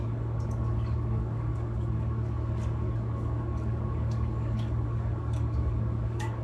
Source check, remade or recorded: remade